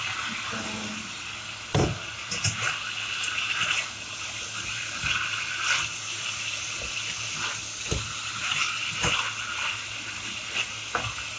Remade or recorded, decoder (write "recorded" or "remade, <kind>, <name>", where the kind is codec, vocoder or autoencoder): recorded